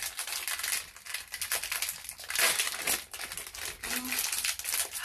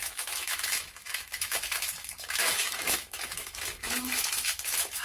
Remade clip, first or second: second